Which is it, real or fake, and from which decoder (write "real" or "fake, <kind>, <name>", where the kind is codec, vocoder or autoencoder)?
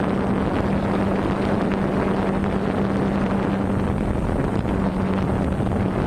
real